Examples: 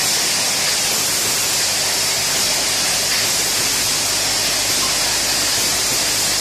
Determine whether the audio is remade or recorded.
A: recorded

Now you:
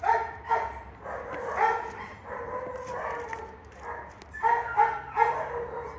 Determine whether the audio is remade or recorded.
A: recorded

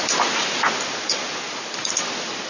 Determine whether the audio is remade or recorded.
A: recorded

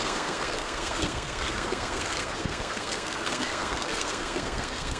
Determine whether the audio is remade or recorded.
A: remade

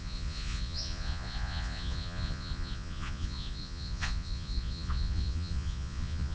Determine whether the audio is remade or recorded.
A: remade